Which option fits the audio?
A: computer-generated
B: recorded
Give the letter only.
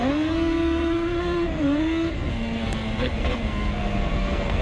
A